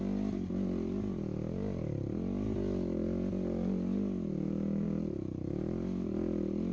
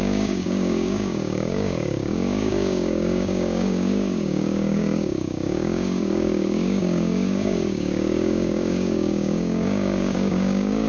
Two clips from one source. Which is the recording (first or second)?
first